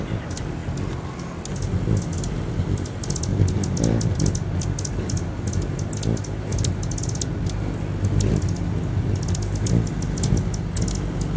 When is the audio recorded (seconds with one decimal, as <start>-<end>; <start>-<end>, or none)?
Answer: 0.0-11.4